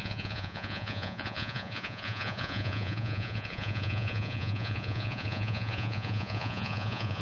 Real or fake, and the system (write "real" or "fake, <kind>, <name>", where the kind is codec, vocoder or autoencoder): fake, vocoder, Vocos